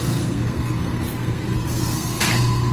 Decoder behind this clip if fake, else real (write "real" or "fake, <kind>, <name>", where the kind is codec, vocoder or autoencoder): fake, codec, SNAC